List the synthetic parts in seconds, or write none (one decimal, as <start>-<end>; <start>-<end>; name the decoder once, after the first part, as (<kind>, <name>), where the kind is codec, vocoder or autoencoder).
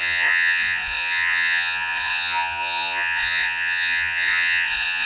0.0-5.1 (vocoder, Vocos)